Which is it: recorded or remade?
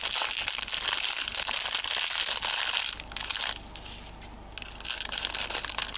recorded